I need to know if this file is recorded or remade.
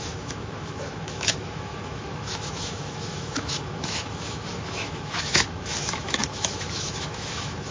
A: remade